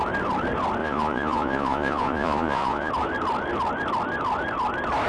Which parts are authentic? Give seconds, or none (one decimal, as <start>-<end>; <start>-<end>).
0.0-0.8; 2.9-5.1